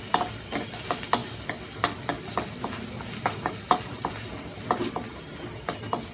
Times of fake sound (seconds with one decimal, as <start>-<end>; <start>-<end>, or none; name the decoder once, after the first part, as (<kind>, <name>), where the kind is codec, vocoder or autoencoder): none

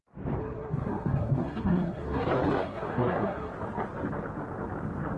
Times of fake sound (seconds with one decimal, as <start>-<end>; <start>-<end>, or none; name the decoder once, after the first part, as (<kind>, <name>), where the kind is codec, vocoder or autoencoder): 0.4-3.5 (codec, SNAC)

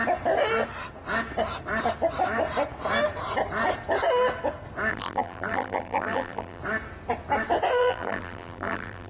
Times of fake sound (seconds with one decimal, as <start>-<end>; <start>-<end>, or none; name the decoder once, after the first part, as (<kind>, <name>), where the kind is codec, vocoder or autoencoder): 4.9-6.6 (vocoder, BigVGAN v2); 7.8-9.1

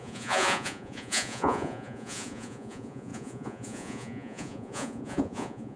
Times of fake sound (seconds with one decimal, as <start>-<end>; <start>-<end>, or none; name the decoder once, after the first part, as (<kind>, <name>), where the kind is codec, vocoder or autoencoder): 0.0-5.8 (vocoder, Vocos)

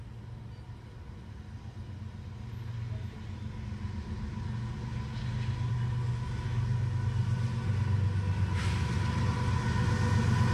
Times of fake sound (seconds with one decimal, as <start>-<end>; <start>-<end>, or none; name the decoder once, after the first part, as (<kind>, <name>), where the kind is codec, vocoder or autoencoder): none

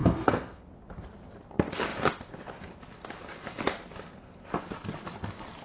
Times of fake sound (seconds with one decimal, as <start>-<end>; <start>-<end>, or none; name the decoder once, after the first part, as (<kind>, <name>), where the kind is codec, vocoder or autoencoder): 0.0-0.6 (codec, SNAC)

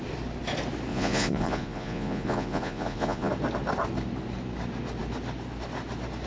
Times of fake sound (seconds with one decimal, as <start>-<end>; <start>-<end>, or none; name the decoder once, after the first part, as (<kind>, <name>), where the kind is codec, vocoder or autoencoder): 0.9-3.3 (vocoder, Vocos)

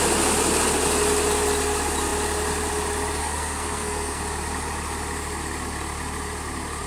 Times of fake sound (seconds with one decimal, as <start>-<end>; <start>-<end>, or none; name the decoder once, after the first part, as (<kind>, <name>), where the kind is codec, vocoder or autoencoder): 3.2-4.2 (codec, SNAC)